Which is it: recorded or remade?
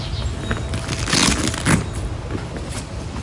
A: recorded